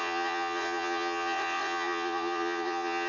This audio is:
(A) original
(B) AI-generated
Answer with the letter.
B